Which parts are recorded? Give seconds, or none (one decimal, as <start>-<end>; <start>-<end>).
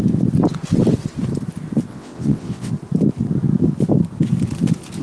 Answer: 0.0-1.9; 2.7-5.0